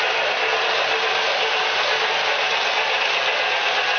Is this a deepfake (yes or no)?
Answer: no